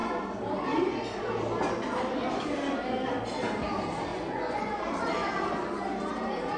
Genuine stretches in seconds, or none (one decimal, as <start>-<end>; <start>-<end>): 0.0-4.1; 4.7-6.6